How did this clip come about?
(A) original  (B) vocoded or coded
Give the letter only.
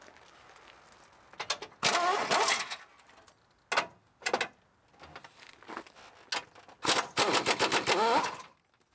A